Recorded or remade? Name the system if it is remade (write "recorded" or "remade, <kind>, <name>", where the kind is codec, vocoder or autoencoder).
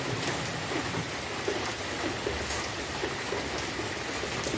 recorded